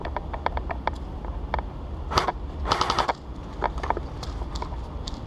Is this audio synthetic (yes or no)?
no